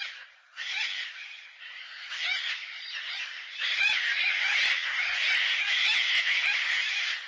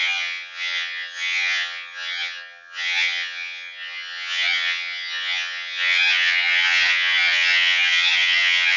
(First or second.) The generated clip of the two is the second